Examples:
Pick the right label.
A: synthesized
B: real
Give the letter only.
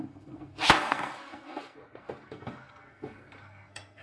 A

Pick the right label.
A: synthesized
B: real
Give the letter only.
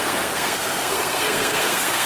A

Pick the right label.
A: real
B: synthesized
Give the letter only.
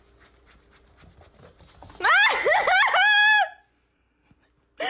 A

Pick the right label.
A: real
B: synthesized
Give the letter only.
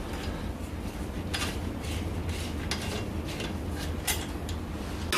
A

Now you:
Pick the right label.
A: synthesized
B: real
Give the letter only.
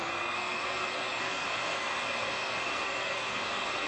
A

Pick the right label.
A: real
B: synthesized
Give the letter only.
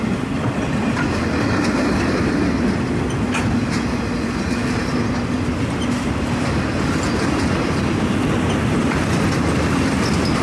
A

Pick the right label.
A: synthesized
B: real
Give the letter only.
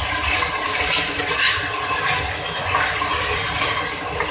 B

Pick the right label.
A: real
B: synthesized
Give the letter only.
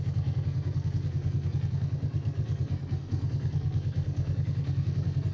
B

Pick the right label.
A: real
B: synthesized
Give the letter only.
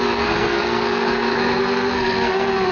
B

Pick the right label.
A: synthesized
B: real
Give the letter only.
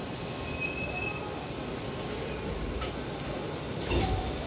B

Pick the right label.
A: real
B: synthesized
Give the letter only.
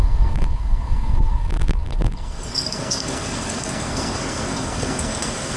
B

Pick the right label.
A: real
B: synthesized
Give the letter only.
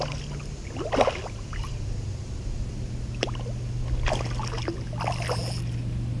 A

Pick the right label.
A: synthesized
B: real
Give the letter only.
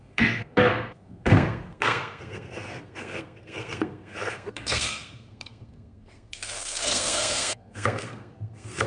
A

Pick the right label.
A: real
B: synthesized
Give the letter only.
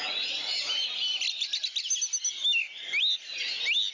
A